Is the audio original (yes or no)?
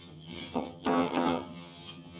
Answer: no